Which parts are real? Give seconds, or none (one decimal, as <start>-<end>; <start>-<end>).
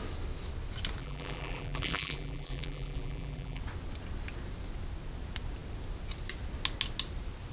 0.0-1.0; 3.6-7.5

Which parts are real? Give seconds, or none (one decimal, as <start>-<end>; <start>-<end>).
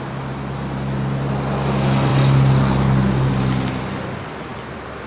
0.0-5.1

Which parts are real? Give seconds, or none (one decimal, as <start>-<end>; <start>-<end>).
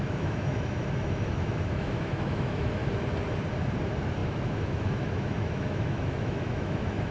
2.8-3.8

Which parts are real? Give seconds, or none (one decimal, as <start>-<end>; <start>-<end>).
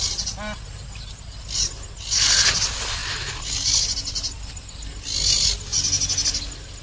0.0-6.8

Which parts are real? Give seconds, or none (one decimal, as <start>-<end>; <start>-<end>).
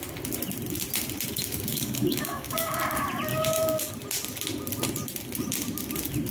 0.0-1.7; 2.8-3.3; 3.9-6.3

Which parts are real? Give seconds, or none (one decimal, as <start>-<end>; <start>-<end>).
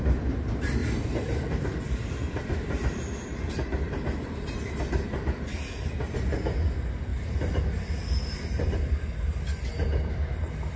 0.0-0.8; 1.8-3.3; 4.8-7.1; 7.6-10.8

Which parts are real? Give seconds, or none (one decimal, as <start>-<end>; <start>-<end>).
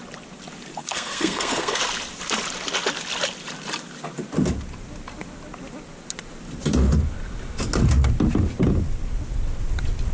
0.0-0.8; 1.8-10.1